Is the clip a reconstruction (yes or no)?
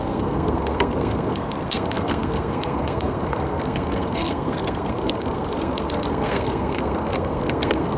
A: yes